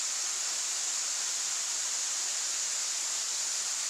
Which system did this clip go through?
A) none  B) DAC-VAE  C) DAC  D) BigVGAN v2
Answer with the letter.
A